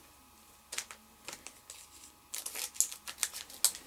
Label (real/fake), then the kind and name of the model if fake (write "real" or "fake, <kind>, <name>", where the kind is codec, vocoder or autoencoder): real